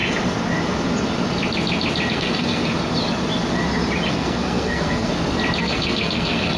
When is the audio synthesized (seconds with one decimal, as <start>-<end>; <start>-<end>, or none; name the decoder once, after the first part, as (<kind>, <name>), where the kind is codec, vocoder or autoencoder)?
2.1-2.6 (codec, SNAC); 4.1-5.1; 5.6-6.6